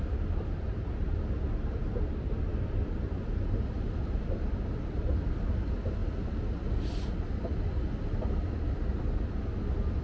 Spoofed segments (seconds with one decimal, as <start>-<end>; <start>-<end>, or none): none